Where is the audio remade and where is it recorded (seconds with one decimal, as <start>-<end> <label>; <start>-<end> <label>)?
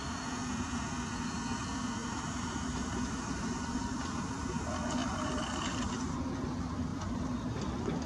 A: 0.0-2.0 recorded; 2.0-4.6 remade; 4.6-5.0 recorded; 5.0-6.2 remade; 6.2-6.9 recorded; 6.9-7.6 remade; 7.6-8.1 recorded